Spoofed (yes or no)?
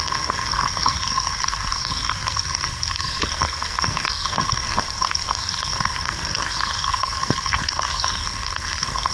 yes